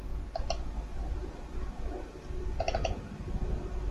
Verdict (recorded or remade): recorded